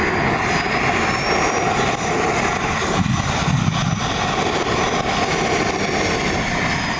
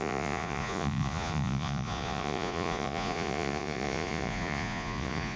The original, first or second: first